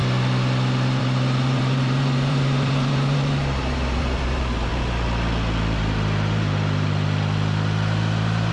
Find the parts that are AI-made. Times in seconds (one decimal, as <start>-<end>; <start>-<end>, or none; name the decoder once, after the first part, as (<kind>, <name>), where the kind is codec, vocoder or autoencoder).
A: 1.0-4.7 (vocoder, BigVGAN v2)